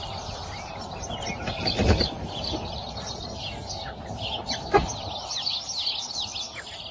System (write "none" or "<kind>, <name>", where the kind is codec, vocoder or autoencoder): none